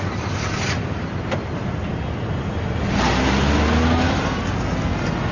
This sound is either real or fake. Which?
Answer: real